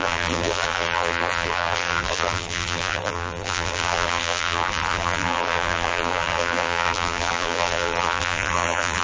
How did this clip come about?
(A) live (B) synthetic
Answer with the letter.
B